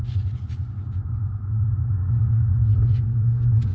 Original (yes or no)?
no